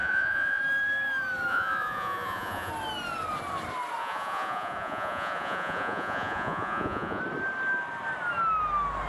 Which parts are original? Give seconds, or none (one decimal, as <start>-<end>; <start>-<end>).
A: 0.6-1.5; 2.7-4.0; 7.2-9.1

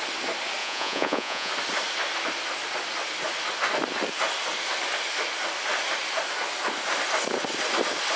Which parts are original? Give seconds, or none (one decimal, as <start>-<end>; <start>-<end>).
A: 0.0-0.6; 1.5-8.2

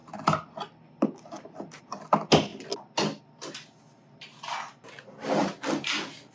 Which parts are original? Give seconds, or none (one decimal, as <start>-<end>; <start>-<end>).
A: 0.0-6.3